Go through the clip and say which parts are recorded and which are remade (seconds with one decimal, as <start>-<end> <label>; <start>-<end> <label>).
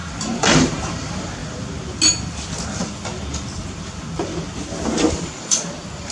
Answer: 0.0-1.4 remade; 1.4-3.6 recorded; 3.6-4.3 remade; 4.3-5.1 recorded; 5.1-6.1 remade